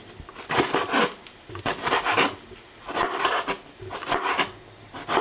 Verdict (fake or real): real